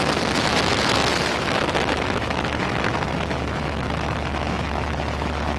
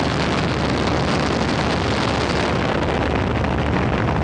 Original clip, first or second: second